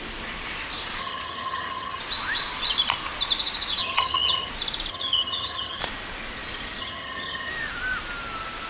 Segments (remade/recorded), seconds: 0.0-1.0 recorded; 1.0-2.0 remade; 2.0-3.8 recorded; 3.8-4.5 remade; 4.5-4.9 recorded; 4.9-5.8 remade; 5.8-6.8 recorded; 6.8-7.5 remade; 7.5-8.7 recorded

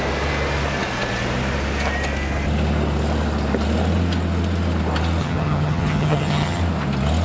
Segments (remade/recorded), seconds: 0.0-5.2 recorded; 5.2-6.6 remade; 6.6-7.2 recorded

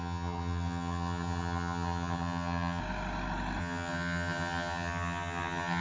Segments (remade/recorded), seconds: 0.0-2.8 remade; 2.8-3.6 recorded; 3.6-5.8 remade

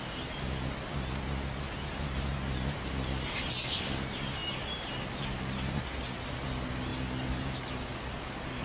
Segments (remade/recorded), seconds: 0.0-8.6 recorded

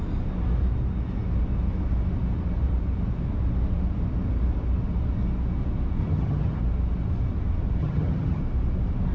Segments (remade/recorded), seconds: 0.0-6.0 recorded; 6.0-6.6 remade; 6.6-7.8 recorded; 7.8-8.4 remade; 8.4-9.1 recorded

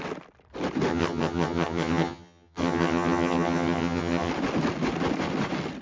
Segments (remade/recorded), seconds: 0.0-0.9 recorded; 0.9-4.3 remade; 4.3-5.8 recorded